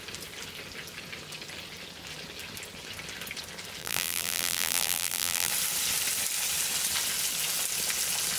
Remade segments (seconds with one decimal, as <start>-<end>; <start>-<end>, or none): 3.8-5.5